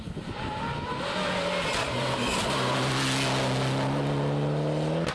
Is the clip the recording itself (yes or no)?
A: yes